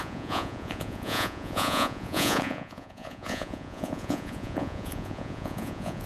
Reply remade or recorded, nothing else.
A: remade